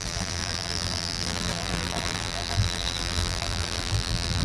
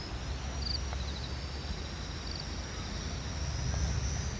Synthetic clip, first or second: first